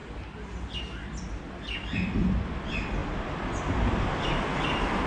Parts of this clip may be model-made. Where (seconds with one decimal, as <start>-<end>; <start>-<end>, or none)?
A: none